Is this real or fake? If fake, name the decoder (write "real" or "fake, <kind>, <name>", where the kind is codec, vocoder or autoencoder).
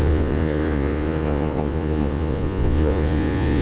fake, vocoder, Vocos